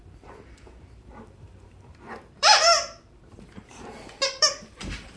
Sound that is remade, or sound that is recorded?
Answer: remade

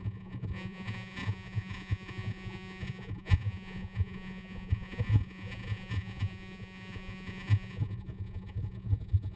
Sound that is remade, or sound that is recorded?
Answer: remade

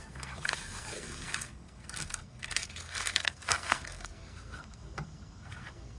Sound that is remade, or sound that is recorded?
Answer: remade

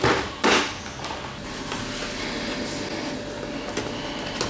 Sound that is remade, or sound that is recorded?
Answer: recorded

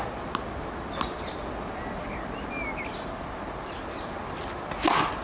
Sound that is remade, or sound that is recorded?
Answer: recorded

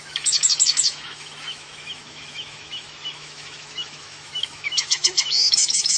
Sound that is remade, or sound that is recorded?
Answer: remade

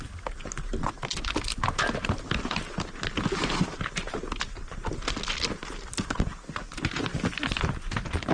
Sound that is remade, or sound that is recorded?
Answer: recorded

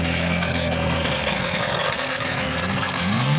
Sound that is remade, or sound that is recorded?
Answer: remade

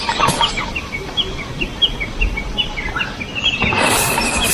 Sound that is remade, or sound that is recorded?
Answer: recorded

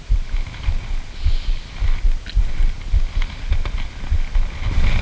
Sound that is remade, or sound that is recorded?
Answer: recorded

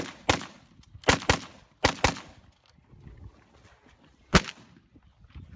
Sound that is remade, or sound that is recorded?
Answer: recorded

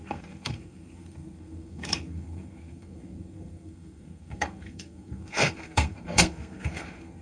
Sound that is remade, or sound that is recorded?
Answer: remade